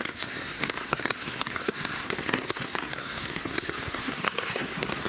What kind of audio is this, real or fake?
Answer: fake